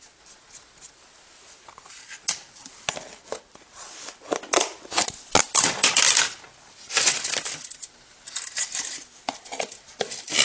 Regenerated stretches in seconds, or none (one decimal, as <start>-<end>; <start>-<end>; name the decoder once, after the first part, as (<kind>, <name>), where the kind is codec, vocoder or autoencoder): none